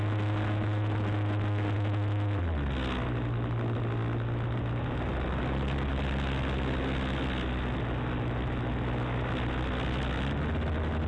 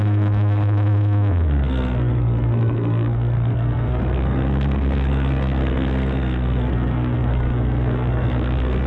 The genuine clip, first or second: first